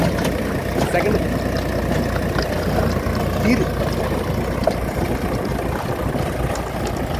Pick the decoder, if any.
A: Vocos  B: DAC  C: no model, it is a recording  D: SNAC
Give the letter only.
C